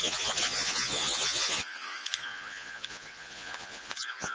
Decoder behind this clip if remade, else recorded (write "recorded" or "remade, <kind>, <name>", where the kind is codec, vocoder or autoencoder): remade, vocoder, Vocos